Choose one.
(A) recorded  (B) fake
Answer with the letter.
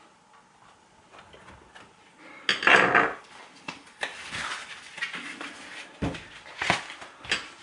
A